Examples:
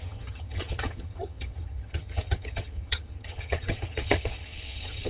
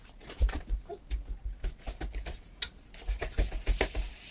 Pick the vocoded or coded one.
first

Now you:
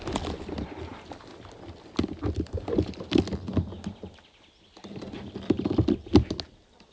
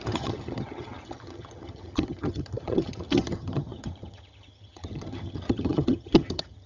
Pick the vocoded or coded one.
second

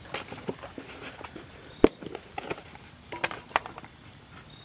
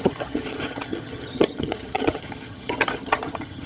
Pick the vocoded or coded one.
second